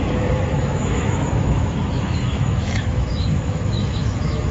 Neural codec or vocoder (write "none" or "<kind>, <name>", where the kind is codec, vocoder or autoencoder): autoencoder, DAC-VAE